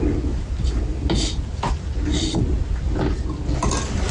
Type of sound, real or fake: real